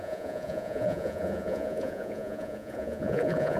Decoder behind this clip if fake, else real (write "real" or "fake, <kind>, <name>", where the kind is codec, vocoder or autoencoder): fake, vocoder, Vocos